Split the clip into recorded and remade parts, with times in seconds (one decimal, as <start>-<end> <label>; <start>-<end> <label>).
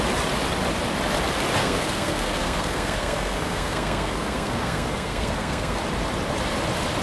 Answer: 0.0-1.6 recorded; 1.6-5.8 remade; 5.8-7.0 recorded